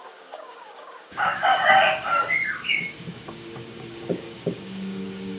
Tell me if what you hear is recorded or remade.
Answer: remade